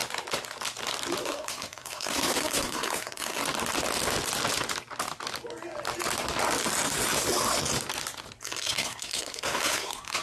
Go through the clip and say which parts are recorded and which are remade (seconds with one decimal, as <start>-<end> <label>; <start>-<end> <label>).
0.0-1.2 recorded; 1.2-3.4 remade; 3.4-8.4 recorded; 8.4-10.2 remade